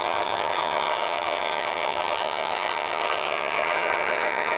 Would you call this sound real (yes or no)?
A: no